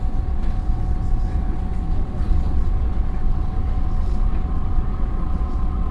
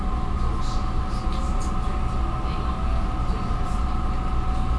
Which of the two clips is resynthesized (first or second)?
first